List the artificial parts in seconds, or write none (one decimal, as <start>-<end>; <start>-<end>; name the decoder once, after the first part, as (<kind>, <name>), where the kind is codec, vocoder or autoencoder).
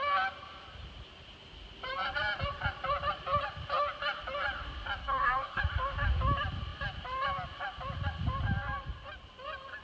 5.0-5.6 (codec, SNAC)